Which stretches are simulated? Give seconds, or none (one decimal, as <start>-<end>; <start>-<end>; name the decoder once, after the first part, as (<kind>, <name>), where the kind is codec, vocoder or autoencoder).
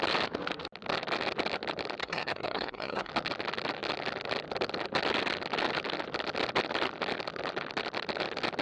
2.0-3.1 (codec, SNAC)